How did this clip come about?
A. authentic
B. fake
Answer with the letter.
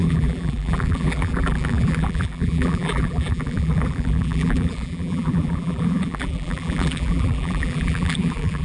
B